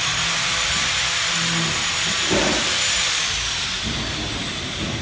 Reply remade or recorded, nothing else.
recorded